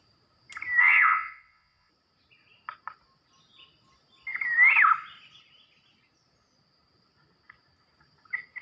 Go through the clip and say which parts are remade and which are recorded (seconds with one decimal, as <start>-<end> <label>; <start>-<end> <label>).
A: 0.0-0.8 recorded; 0.8-1.9 remade; 1.9-8.6 recorded